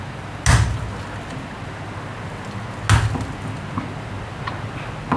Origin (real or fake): real